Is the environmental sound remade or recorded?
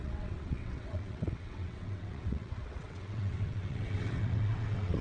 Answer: remade